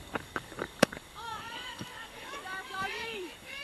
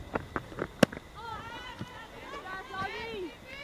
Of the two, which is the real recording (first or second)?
second